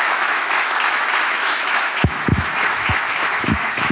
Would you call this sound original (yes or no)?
no